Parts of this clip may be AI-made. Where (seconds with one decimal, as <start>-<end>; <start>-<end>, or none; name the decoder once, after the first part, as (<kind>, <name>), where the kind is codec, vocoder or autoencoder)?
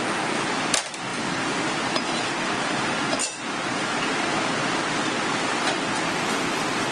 0.0-3.2 (vocoder, BigVGAN v2); 4.4-6.9